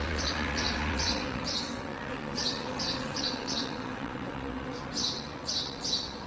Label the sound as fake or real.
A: fake